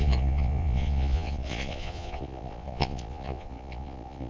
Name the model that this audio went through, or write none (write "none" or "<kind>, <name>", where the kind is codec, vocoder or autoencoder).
vocoder, Vocos